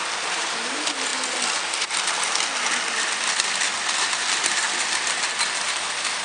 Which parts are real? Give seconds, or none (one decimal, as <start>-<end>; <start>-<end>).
0.0-6.2

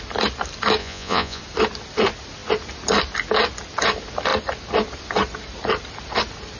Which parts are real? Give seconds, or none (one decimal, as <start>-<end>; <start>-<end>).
0.0-0.8; 1.4-6.6

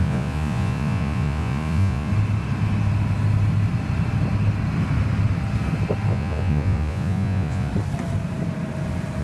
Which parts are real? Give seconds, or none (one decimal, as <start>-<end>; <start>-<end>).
2.1-6.1; 7.7-9.2

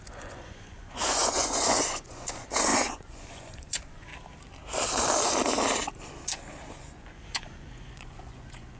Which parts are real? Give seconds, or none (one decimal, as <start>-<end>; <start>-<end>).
4.1-6.7